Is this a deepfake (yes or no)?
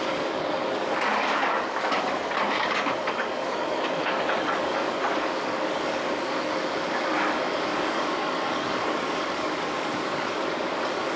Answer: yes